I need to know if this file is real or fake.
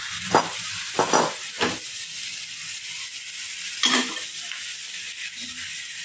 real